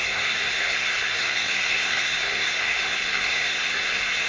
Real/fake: fake